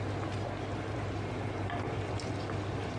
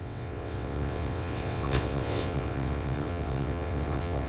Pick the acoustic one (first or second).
first